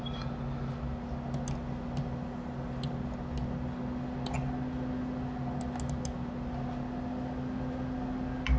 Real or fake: real